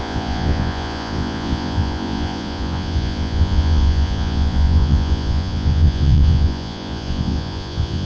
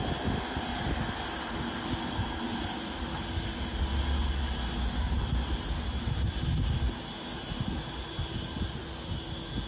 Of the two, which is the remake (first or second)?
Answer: first